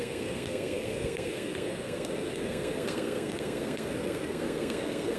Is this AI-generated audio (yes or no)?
yes